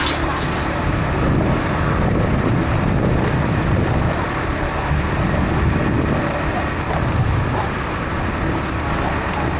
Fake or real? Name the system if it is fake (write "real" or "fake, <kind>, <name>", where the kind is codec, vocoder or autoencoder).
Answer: fake, vocoder, BigVGAN v2